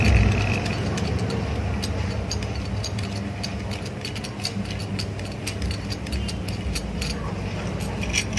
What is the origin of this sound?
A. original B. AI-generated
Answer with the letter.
A